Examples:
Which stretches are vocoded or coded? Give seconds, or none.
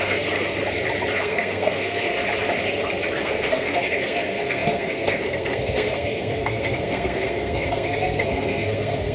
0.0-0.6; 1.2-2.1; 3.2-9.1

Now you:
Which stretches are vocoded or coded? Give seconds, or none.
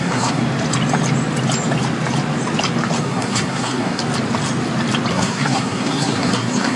0.0-0.4; 3.0-4.0; 5.1-6.8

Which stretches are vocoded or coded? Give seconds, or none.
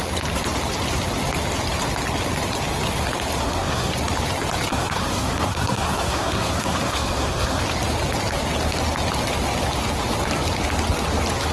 3.4-3.9; 4.7-7.6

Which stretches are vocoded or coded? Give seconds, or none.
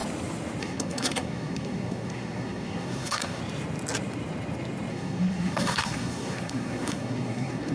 0.6-3.4; 4.9-7.7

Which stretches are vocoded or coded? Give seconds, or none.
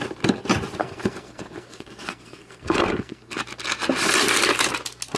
0.8-3.4